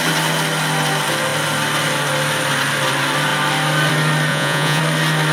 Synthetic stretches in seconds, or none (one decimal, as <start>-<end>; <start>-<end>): 4.3-4.8